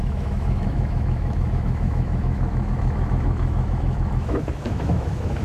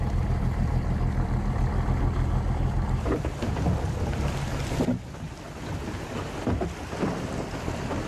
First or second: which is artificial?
first